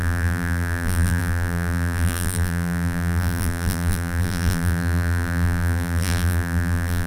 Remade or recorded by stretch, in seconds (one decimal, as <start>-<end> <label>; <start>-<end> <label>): 0.0-7.1 remade